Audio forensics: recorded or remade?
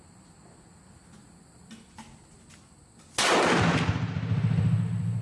recorded